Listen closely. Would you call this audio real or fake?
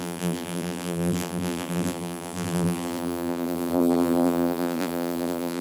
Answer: fake